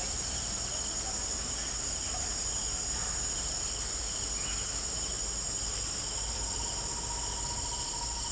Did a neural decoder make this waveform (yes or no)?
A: no